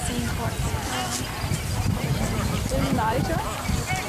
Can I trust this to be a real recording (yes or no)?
yes